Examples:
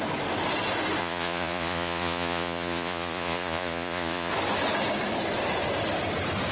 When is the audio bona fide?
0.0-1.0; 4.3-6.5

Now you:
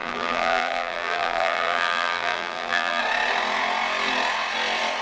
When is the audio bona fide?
3.0-5.0

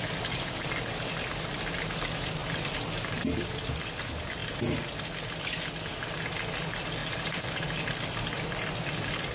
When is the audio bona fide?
0.0-9.3

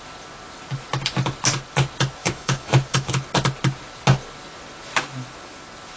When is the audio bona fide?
0.0-2.2; 3.1-6.0

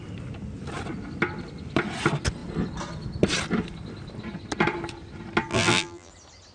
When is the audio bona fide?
0.0-5.5; 6.1-6.5